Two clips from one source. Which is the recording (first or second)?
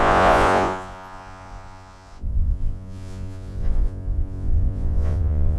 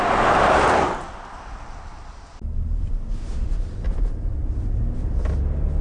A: second